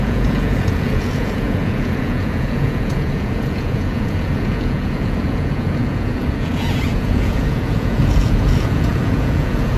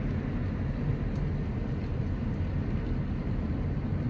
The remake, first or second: first